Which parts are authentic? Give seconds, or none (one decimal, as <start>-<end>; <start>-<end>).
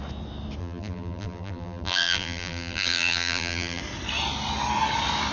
0.0-0.6; 3.8-5.3